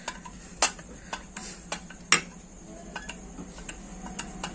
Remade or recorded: recorded